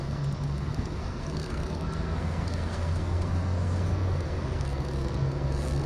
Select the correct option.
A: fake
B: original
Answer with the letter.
A